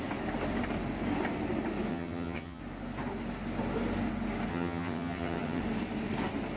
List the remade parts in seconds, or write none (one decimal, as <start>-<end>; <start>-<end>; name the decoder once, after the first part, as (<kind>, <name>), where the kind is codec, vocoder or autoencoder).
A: 1.9-2.6 (vocoder, HiFi-GAN); 4.5-5.6